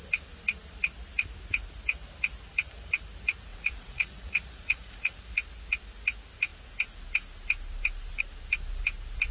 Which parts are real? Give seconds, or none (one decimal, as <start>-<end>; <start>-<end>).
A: 0.0-3.5; 5.2-9.3